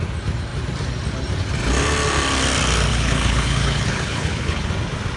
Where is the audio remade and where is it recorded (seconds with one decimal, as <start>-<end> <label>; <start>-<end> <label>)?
0.0-2.9 recorded; 2.9-4.7 remade; 4.7-5.2 recorded